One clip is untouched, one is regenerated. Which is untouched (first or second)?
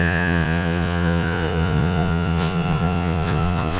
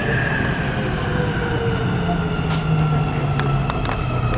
second